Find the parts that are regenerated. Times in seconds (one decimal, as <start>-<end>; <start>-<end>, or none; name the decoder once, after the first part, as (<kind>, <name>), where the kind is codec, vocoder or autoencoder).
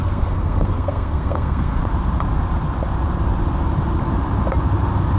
0.0-1.8 (codec, SNAC)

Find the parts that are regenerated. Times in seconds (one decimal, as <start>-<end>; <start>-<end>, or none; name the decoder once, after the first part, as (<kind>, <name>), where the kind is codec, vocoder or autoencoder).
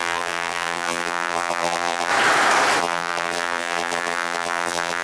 0.0-2.1 (vocoder, BigVGAN v2); 2.8-5.0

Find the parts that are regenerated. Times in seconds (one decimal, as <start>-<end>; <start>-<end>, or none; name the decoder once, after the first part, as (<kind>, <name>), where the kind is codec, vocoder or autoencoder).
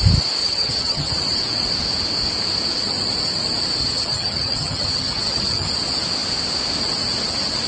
0.4-1.1 (vocoder, HiFi-GAN); 3.8-5.7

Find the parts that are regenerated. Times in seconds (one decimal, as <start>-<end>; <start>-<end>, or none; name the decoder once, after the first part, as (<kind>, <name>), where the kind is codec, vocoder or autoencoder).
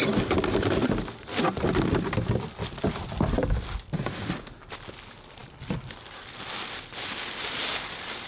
none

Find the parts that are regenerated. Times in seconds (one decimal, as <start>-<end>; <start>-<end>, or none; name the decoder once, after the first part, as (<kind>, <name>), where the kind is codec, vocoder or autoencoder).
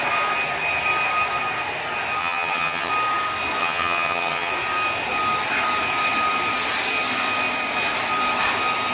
2.2-2.9 (vocoder, HiFi-GAN); 3.6-4.5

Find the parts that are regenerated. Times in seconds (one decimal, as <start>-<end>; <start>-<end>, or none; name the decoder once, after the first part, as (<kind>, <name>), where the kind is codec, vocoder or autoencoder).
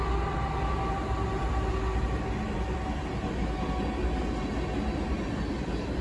none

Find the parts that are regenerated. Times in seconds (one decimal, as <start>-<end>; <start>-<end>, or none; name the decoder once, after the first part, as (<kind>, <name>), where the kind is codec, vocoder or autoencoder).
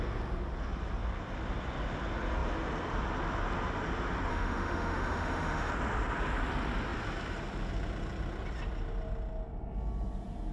4.3-5.7 (autoencoder, DAC-VAE)